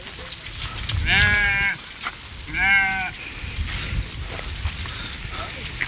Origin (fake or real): real